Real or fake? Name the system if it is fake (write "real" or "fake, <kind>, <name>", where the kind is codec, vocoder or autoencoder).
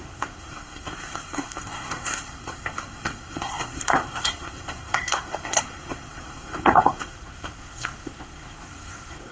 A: fake, codec, SNAC